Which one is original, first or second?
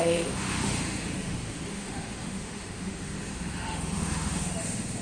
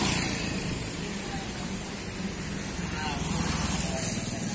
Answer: second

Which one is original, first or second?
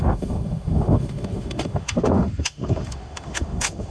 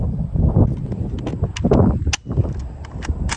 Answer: second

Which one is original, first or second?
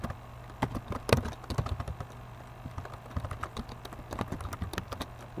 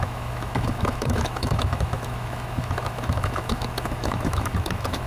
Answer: first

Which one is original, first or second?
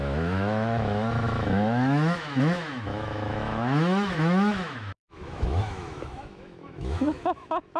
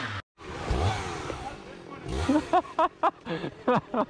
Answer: second